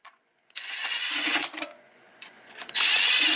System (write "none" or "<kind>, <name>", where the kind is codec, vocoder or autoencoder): vocoder, Vocos